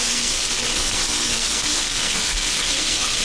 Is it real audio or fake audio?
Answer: fake